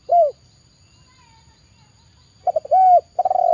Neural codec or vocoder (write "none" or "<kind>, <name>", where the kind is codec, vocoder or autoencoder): none